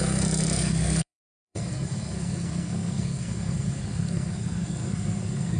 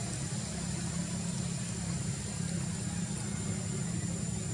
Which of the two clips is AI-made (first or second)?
first